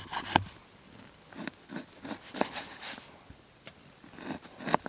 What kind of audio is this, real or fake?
real